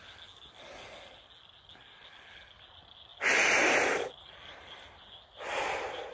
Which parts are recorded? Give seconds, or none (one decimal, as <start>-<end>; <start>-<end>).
0.0-6.1